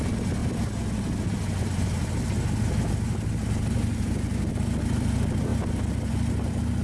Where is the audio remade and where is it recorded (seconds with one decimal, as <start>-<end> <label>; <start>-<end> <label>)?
0.0-6.8 recorded